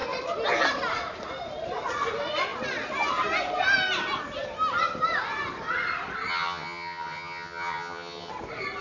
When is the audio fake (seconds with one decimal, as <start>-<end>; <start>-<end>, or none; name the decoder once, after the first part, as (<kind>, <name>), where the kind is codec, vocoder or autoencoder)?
6.3-8.3 (vocoder, HiFi-GAN)